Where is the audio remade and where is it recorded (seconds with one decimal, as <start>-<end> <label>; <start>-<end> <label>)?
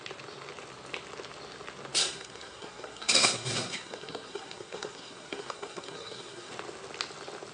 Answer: 0.0-2.0 recorded; 2.0-6.5 remade; 6.5-7.5 recorded